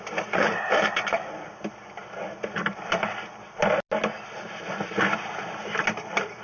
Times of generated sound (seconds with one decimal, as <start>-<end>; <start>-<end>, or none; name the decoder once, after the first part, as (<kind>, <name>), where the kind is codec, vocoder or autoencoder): none